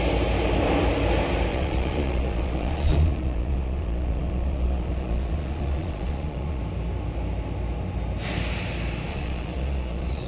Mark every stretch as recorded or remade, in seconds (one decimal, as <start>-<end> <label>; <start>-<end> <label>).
0.0-1.5 recorded; 1.5-6.6 remade; 6.6-9.1 recorded; 9.1-10.3 remade